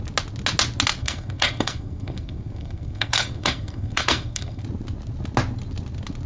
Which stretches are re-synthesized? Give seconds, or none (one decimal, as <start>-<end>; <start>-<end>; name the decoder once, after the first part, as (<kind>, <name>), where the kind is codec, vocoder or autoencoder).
1.0-4.6 (codec, SNAC)